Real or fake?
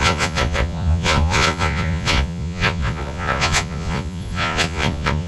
fake